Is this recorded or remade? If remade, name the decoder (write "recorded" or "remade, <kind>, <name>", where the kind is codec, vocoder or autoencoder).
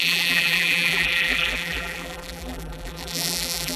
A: remade, vocoder, BigVGAN v2